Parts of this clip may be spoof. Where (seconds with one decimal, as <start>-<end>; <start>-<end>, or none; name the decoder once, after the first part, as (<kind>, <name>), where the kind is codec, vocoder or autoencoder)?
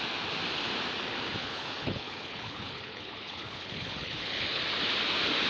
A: 1.4-4.6 (codec, HILCodec)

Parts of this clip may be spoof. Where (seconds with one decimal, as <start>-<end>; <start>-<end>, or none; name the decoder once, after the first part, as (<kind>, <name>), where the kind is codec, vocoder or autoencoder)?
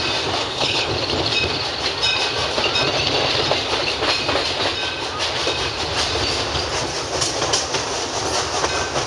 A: 0.4-0.9 (codec, HILCodec)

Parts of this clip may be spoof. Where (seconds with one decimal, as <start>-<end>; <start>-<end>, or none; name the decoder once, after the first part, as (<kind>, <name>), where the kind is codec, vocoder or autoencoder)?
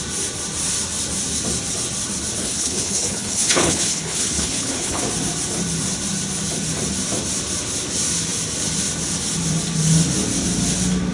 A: 2.4-5.0 (codec, HILCodec)